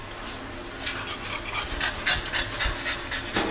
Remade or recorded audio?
recorded